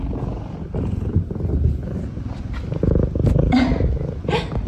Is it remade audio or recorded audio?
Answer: recorded